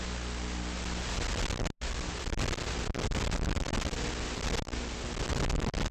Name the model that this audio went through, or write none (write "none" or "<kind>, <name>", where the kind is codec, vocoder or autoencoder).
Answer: none